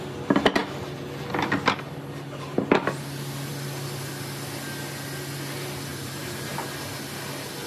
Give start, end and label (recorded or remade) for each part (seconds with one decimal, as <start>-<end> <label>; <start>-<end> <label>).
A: 0.0-5.9 recorded; 5.9-6.6 remade; 6.6-7.7 recorded